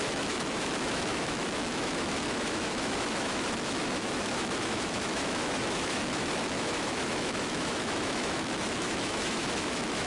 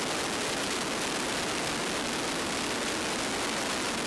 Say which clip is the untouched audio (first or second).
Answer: second